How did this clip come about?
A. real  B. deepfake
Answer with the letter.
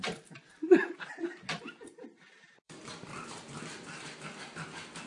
B